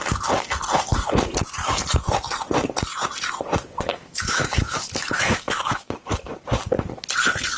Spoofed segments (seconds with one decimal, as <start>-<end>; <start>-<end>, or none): 3.9-6.3